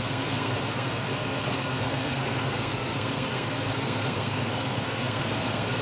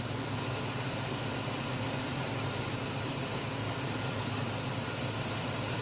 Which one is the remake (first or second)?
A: first